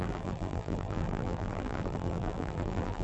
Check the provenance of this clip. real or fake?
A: fake